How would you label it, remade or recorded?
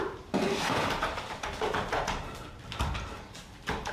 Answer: recorded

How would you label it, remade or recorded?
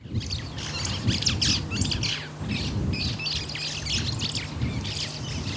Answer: recorded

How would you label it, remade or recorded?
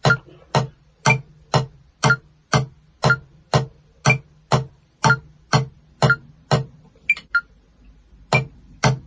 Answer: recorded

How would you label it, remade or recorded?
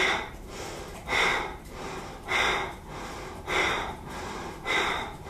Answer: remade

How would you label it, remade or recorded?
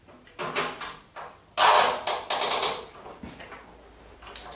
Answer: recorded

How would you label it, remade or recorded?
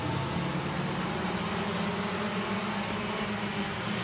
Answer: recorded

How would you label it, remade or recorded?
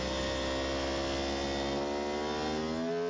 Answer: recorded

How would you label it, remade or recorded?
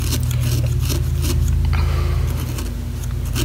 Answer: recorded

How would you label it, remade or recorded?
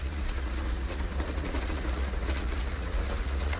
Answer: remade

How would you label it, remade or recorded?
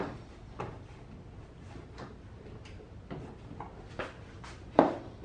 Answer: recorded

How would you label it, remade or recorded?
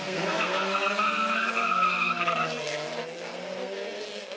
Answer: remade